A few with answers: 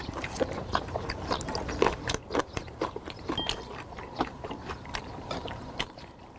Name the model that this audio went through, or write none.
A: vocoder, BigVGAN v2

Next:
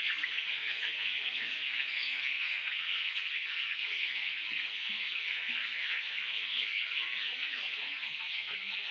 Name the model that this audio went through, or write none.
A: codec, SNAC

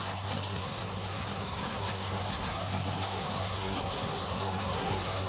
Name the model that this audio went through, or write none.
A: codec, SNAC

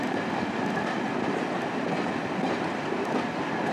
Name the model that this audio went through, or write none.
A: none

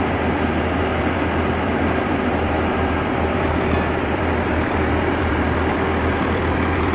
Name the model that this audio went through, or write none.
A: vocoder, BigVGAN v2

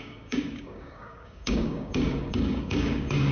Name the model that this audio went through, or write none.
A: codec, DAC